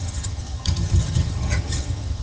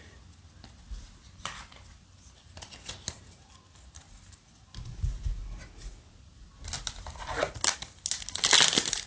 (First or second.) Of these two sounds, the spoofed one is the first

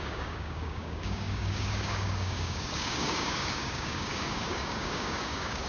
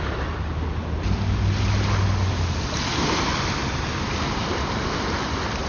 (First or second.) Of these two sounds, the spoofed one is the first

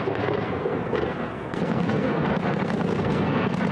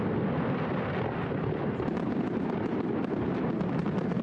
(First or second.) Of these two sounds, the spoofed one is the first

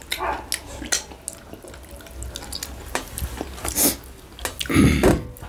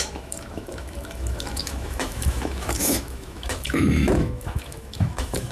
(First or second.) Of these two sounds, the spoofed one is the second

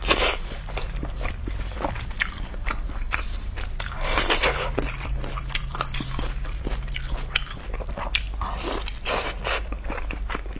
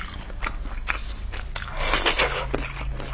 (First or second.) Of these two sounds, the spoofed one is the first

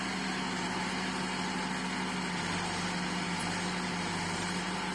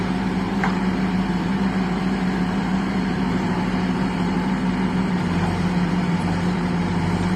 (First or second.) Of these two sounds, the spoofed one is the second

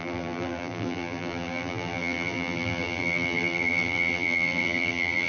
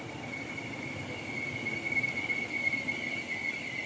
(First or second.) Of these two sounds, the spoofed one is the first